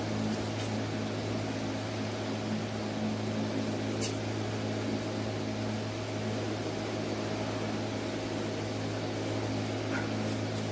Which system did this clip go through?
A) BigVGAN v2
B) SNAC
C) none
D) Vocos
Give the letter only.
C